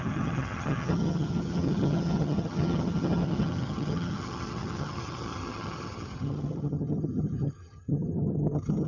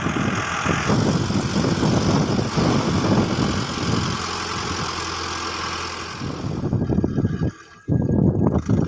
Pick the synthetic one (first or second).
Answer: first